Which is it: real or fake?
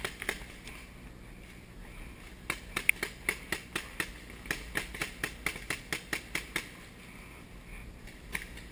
real